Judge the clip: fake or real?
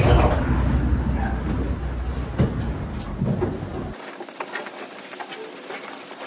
real